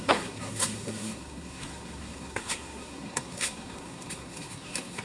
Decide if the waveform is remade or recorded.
remade